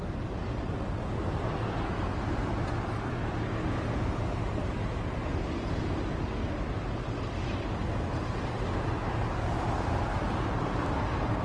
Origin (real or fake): real